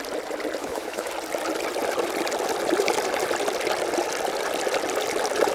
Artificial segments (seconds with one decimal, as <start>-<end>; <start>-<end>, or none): 0.6-1.1